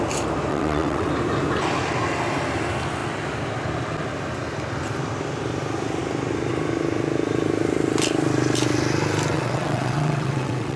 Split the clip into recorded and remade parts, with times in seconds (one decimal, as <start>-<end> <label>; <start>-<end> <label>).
0.0-0.5 recorded; 0.5-1.1 remade; 1.1-9.3 recorded; 9.3-10.8 remade